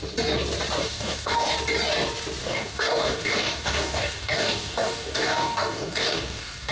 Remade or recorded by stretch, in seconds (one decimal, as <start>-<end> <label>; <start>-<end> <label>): 0.0-0.8 recorded; 0.8-1.5 remade; 1.5-2.4 recorded; 2.4-6.7 remade